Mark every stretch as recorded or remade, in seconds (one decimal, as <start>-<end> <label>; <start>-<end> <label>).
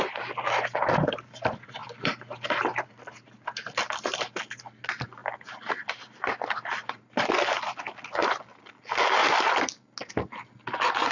0.0-1.8 recorded; 1.8-3.0 remade; 3.0-5.2 recorded; 5.2-7.3 remade; 7.3-8.2 recorded; 8.2-8.7 remade; 8.7-11.1 recorded